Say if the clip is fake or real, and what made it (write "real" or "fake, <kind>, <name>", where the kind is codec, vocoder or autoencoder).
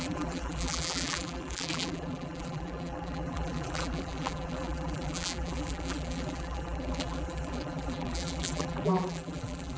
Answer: fake, vocoder, BigVGAN v2